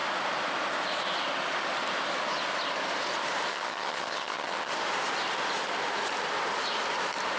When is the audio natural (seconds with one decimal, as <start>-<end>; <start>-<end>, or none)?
0.0-3.5; 4.7-7.4